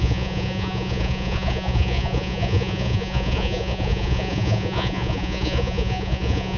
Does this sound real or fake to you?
fake